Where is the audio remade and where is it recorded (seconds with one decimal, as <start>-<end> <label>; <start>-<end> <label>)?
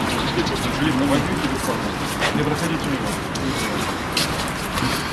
0.0-5.1 recorded